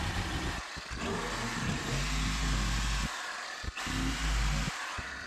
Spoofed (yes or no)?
no